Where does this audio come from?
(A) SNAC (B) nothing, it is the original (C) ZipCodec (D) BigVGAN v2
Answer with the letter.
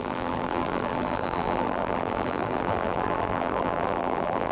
D